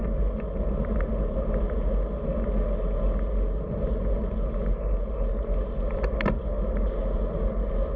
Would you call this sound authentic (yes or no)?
yes